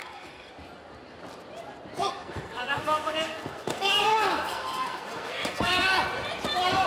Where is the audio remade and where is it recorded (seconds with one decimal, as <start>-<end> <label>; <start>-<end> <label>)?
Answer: 0.0-0.5 remade; 0.5-2.0 recorded; 2.0-5.9 remade; 5.9-6.9 recorded